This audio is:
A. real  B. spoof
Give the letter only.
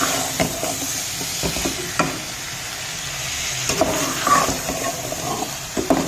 A